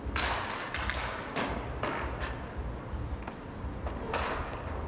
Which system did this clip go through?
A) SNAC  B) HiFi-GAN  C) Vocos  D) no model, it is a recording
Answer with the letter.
D